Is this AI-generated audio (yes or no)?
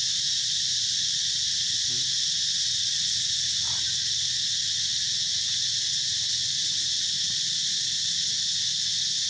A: no